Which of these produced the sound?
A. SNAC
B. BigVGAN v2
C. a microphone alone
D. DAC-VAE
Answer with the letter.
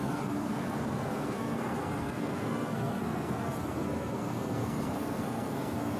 A